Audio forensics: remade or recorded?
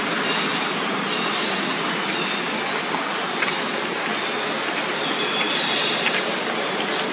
recorded